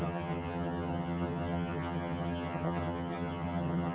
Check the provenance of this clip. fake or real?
fake